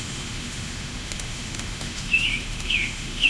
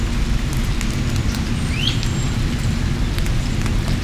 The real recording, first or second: second